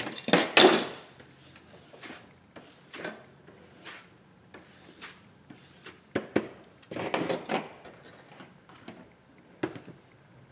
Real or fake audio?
real